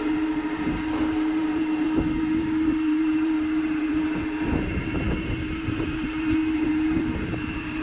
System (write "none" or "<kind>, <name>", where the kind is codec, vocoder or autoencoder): vocoder, BigVGAN v2